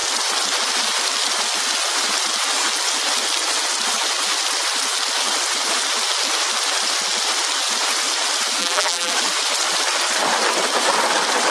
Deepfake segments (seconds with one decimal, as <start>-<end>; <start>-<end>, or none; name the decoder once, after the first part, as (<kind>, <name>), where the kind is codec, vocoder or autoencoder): 8.6-9.1 (vocoder, BigVGAN v2)